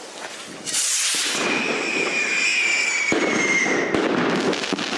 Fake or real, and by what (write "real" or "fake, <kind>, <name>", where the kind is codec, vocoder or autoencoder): real